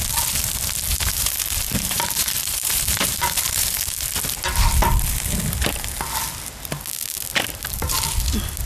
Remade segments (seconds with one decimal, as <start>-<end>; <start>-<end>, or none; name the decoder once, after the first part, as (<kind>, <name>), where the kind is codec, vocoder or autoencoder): 0.9-3.8 (vocoder, BigVGAN v2)